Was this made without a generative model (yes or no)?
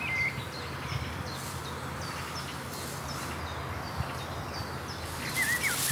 yes